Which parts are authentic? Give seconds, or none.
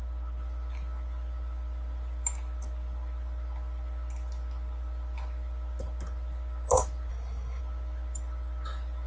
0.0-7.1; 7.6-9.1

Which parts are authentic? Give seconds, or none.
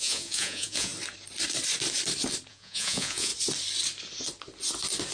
0.9-2.5; 3.3-5.1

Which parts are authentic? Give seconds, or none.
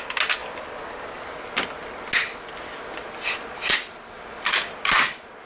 0.0-5.5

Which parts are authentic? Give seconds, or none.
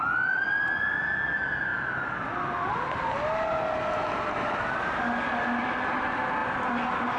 0.0-7.2